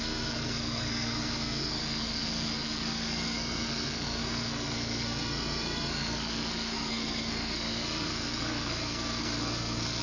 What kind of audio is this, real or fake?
fake